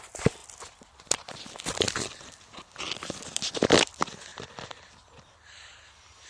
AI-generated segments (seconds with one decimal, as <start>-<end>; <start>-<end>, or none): 0.4-2.4; 4.3-6.3